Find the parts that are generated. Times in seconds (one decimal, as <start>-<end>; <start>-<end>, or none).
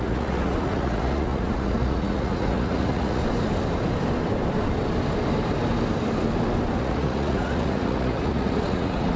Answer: 0.0-3.2; 6.8-9.2